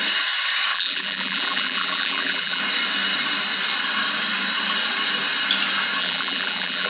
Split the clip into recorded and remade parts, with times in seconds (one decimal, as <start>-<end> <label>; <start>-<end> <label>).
0.0-0.7 recorded; 0.7-2.6 remade; 2.6-6.0 recorded; 6.0-6.9 remade